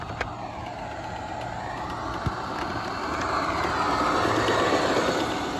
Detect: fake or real real